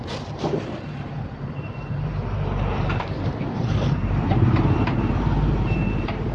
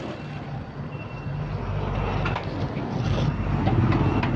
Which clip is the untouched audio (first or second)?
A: second